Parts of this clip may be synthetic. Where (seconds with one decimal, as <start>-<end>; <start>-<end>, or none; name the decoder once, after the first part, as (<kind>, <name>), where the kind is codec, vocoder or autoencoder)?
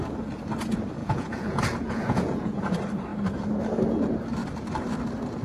1.0-2.6 (vocoder, Vocos)